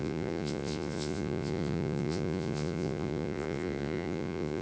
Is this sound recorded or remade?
remade